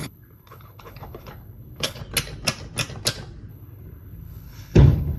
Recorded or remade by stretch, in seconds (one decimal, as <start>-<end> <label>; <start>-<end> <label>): 0.0-2.0 remade; 2.0-3.5 recorded; 3.5-5.2 remade